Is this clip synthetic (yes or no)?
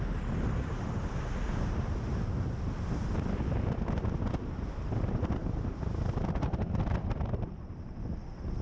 no